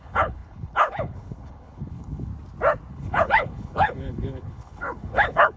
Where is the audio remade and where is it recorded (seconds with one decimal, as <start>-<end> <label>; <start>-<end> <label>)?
0.0-2.3 remade; 2.3-2.9 recorded; 2.9-5.6 remade